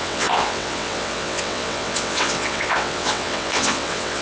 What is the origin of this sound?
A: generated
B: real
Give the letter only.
A